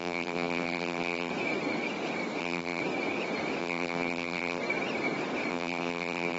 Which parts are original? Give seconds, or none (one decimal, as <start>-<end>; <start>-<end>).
1.3-2.4; 2.8-3.6; 4.6-5.5